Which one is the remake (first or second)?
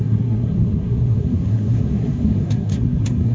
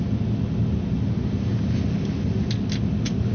first